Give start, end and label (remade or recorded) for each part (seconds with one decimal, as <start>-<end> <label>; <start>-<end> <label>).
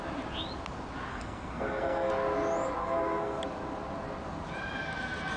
0.0-1.1 recorded; 1.1-2.1 remade; 2.1-2.8 recorded; 2.8-3.4 remade; 3.4-5.4 recorded